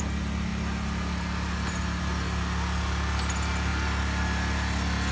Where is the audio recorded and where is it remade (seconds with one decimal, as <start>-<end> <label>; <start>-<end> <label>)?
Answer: 0.0-5.1 recorded